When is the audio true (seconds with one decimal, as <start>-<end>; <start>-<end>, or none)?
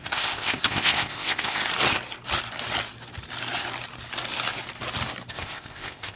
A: 1.6-5.3